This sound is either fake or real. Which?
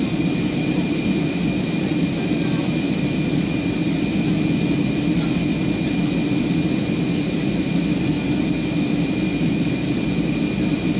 real